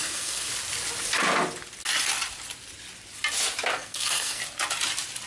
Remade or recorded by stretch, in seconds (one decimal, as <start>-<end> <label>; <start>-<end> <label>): 0.0-0.5 remade; 0.5-3.7 recorded; 3.7-4.4 remade; 4.4-5.3 recorded